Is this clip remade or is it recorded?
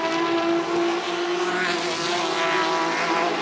recorded